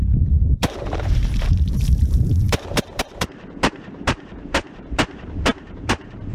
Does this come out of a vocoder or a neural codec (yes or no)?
yes